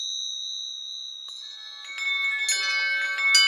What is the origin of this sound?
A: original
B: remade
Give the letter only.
A